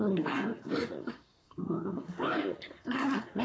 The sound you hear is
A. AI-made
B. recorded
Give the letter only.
A